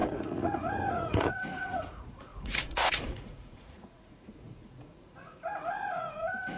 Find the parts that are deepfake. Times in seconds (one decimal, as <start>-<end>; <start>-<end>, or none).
0.0-6.6